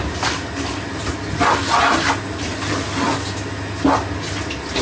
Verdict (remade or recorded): recorded